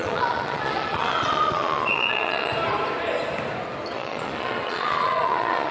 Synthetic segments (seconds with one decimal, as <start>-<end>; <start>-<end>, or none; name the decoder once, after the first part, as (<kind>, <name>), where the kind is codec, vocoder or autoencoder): 0.0-2.5 (vocoder, Vocos); 3.9-5.7